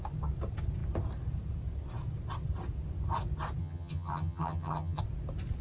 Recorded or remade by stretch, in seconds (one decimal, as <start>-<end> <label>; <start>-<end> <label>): 0.0-3.6 recorded; 3.6-5.0 remade; 5.0-5.6 recorded